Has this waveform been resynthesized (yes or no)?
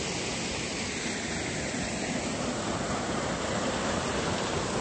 no